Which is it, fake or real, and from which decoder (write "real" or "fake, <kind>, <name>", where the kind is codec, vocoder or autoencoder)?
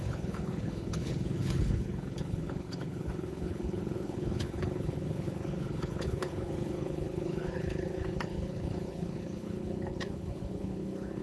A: fake, codec, HILCodec